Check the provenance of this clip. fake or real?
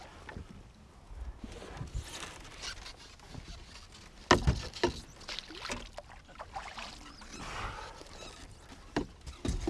real